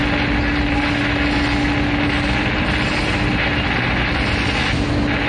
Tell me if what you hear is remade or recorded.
recorded